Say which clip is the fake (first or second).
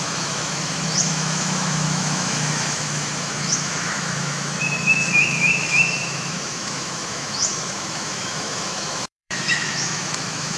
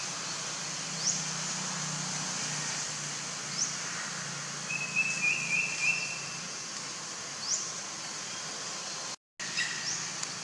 first